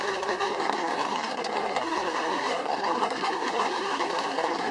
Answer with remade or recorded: remade